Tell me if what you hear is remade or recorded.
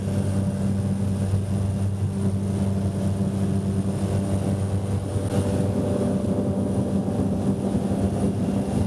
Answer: recorded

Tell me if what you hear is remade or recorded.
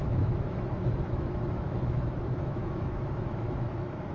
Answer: remade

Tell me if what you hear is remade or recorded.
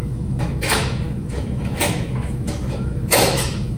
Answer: remade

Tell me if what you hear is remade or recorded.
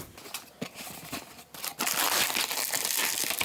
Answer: recorded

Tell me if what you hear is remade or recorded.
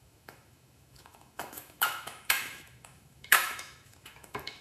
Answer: remade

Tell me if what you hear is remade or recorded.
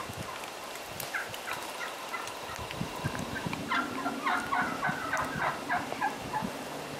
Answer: recorded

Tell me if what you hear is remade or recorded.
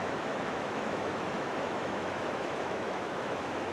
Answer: remade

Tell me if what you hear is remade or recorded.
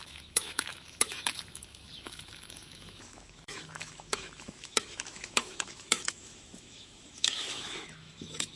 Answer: remade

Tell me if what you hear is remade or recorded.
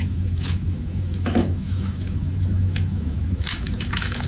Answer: remade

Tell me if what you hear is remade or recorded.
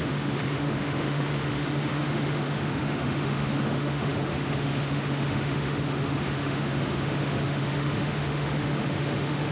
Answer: remade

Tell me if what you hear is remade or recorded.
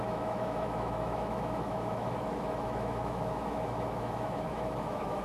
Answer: remade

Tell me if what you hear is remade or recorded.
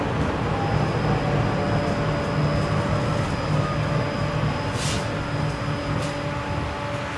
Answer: recorded